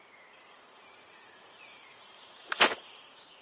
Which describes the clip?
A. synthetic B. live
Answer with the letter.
A